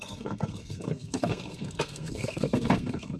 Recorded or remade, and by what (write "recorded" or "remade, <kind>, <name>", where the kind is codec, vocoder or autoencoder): remade, codec, SNAC